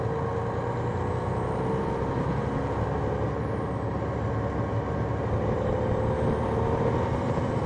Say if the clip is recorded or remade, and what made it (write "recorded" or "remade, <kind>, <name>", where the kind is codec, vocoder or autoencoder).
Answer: recorded